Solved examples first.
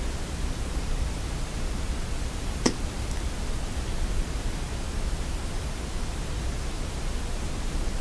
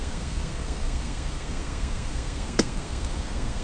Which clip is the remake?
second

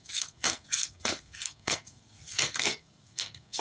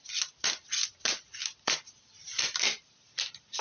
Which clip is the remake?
first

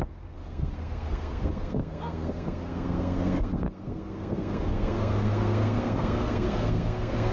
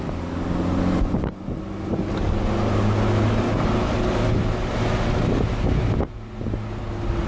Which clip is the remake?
first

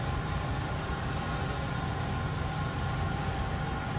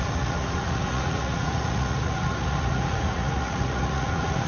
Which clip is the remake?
second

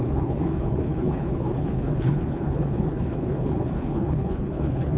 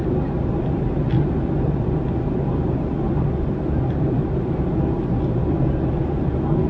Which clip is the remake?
first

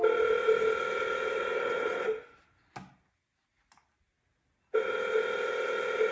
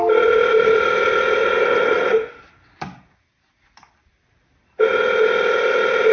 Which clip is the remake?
second